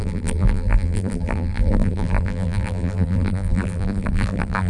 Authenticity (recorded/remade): remade